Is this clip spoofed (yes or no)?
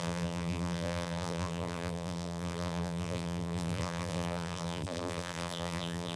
yes